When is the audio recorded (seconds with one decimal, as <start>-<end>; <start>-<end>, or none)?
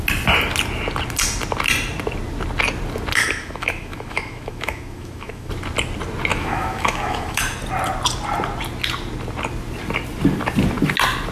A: 0.0-3.2; 5.5-6.3; 7.4-11.3